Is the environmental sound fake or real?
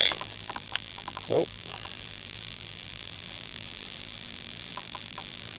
fake